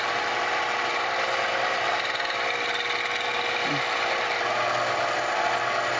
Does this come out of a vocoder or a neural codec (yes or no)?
no